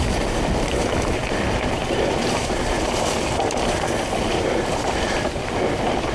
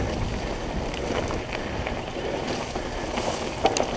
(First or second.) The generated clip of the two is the first